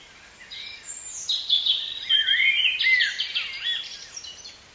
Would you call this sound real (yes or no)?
yes